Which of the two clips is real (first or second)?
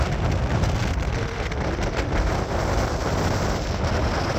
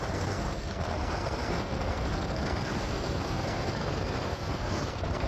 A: first